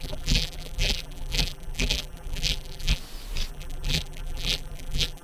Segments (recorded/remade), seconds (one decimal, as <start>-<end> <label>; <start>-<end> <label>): 0.0-3.0 remade; 3.0-3.5 recorded; 3.5-5.2 remade